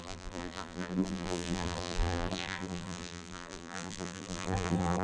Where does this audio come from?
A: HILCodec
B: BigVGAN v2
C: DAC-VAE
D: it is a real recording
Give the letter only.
B